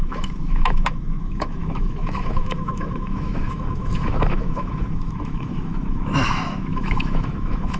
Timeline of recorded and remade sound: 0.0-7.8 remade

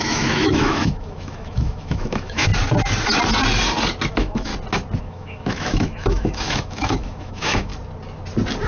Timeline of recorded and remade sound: 0.0-2.5 remade; 2.5-4.1 recorded; 4.1-4.5 remade; 4.5-5.0 recorded; 5.0-7.7 remade; 7.7-8.7 recorded